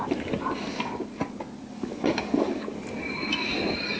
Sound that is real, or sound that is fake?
real